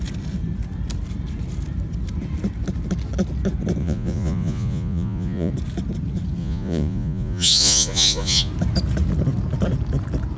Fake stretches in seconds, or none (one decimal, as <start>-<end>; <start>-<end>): 3.8-5.5; 6.4-8.5